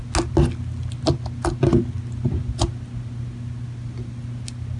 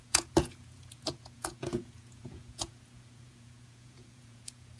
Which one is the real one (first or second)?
first